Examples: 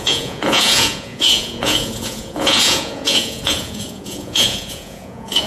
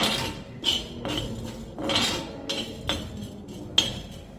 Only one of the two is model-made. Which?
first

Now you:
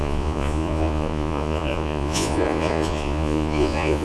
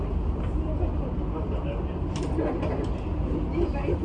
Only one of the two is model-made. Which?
first